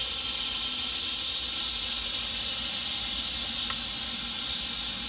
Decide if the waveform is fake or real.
real